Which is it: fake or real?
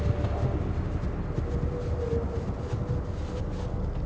real